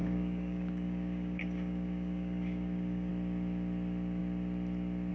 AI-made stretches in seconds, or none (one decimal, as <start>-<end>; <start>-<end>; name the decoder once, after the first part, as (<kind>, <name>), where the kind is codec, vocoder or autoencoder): 0.0-3.1 (codec, DAC)